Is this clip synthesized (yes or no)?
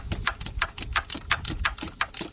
no